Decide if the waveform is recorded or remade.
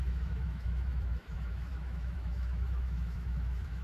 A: remade